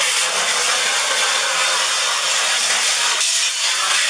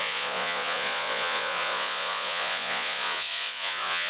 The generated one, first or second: second